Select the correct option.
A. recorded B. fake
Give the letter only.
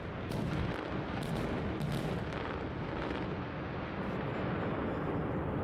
A